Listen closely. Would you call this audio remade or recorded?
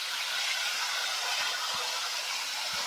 recorded